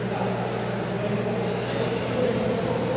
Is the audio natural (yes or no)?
yes